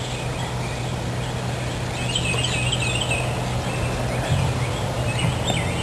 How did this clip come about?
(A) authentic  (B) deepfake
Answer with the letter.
A